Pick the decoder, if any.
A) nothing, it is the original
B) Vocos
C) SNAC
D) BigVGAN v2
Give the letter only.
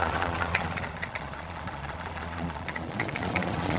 B